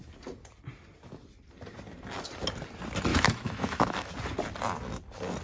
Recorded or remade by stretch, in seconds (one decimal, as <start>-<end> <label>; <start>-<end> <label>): 0.0-3.1 recorded; 3.1-4.1 remade; 4.1-5.4 recorded